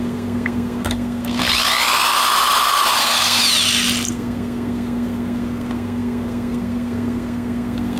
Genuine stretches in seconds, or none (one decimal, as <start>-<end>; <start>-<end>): 1.4-3.0; 3.4-4.1